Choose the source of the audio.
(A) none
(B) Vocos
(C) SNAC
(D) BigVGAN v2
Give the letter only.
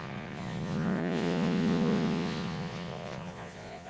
B